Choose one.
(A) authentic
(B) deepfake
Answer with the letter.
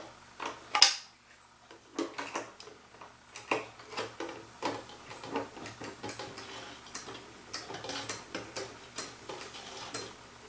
A